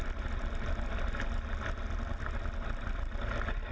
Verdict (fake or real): real